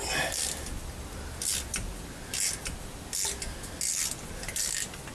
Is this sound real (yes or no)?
yes